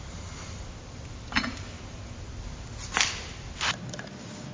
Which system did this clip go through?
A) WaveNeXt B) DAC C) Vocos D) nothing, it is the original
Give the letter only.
D